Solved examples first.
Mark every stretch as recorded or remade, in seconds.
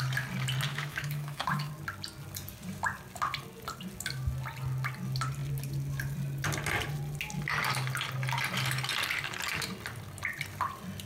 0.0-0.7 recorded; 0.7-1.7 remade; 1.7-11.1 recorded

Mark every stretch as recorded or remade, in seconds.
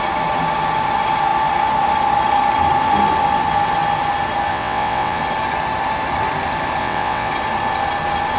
0.0-4.5 recorded; 4.5-5.2 remade; 5.2-6.8 recorded; 6.8-7.3 remade; 7.3-8.4 recorded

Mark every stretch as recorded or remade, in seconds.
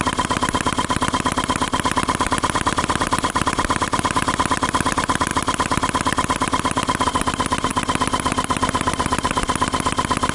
0.0-10.3 recorded